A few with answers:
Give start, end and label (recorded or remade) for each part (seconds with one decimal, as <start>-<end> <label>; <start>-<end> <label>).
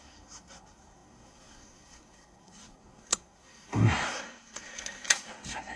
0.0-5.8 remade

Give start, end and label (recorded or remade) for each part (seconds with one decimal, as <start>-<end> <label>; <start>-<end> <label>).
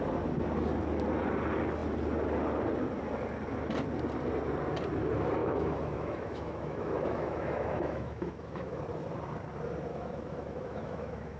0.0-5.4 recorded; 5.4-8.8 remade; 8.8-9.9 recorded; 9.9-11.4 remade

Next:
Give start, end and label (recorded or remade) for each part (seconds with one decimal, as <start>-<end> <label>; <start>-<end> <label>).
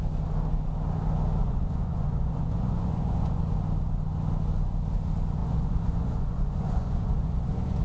0.0-1.4 recorded; 1.4-3.4 remade; 3.4-5.4 recorded; 5.4-7.8 remade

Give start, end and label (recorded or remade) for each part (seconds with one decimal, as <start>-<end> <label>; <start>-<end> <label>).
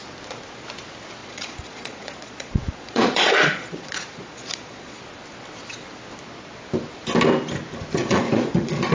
0.0-1.2 recorded; 1.2-5.0 remade; 5.0-8.0 recorded; 8.0-8.9 remade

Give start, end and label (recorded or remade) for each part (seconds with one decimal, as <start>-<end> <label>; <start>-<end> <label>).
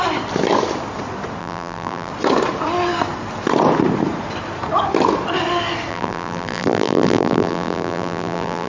0.0-1.4 recorded; 1.4-2.1 remade; 2.1-5.9 recorded; 5.9-8.7 remade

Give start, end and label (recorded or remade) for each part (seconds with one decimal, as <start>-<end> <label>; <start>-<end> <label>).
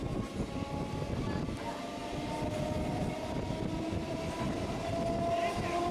0.0-5.9 recorded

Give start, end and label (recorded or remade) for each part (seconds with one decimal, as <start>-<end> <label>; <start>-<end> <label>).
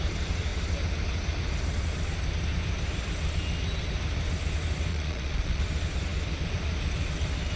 0.0-4.9 recorded; 4.9-5.6 remade; 5.6-7.6 recorded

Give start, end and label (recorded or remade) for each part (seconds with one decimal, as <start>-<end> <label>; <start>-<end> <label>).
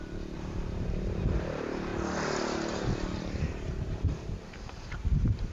0.0-1.9 remade; 1.9-3.2 recorded; 3.2-5.5 remade